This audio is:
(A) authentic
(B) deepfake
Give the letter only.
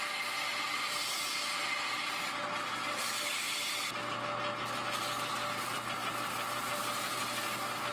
A